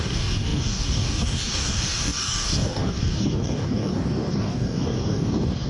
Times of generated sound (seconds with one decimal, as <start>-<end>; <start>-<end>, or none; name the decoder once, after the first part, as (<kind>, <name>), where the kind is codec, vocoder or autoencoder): 0.0-5.7 (codec, DAC)

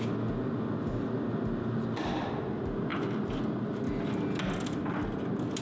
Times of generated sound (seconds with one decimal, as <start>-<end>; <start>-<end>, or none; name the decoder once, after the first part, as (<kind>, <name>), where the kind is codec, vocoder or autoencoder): none